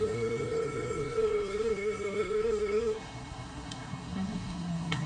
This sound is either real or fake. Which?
fake